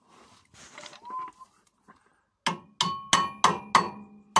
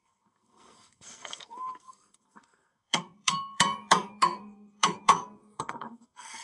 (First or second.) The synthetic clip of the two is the second